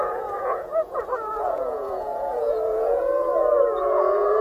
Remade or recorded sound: remade